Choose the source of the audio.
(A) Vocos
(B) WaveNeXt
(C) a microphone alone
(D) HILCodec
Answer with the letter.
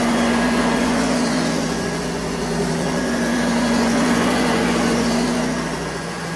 A